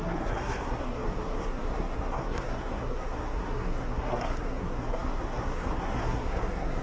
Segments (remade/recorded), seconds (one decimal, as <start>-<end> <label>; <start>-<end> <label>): 0.0-6.8 remade